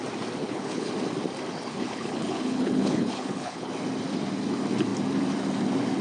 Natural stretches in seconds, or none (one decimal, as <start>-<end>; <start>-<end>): 0.0-0.4; 0.9-1.7; 3.7-6.0